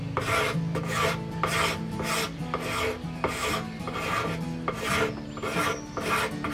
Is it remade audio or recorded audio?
recorded